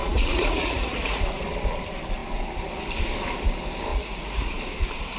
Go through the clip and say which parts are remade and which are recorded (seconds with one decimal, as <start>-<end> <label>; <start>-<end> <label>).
0.0-1.4 remade; 1.4-3.9 recorded; 3.9-4.5 remade; 4.5-5.2 recorded